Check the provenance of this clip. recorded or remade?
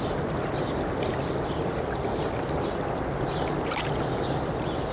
recorded